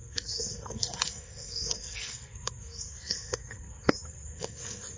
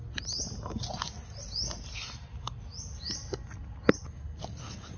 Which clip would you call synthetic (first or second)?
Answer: first